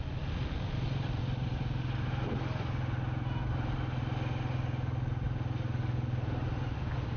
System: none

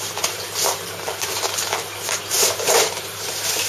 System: vocoder, BigVGAN v2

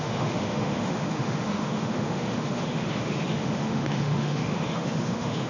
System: autoencoder, DAC-VAE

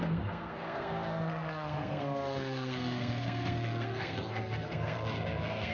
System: codec, SNAC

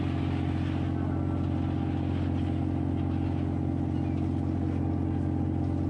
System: none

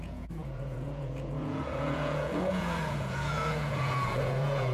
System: vocoder, Vocos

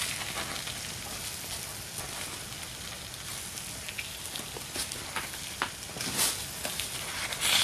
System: none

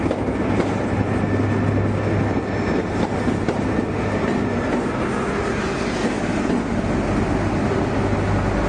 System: none